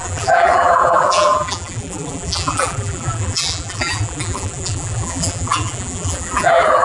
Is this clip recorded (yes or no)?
no